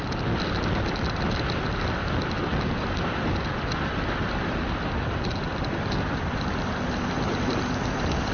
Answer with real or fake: real